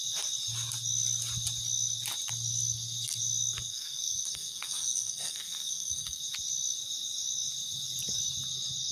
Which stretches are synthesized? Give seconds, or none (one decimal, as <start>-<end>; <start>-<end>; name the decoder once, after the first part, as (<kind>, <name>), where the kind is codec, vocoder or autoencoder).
3.7-6.2 (codec, SNAC)